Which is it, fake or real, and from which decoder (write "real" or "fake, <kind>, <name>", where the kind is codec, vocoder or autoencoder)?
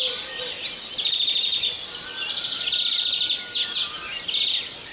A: real